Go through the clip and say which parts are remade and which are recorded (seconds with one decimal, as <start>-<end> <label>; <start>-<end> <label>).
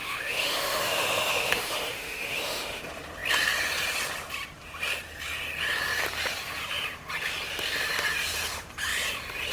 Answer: 0.0-2.8 remade; 2.8-9.5 recorded